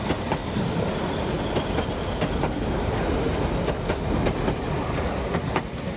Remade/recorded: recorded